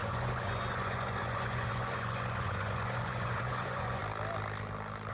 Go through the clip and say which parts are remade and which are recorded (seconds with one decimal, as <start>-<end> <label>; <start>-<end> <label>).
0.0-4.0 remade; 4.0-5.1 recorded